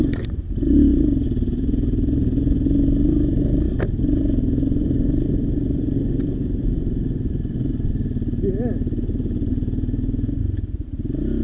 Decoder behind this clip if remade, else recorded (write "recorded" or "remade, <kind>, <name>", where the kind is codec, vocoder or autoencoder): recorded